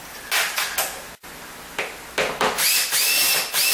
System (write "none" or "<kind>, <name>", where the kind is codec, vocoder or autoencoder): none